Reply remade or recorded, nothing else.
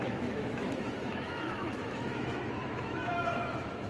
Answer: remade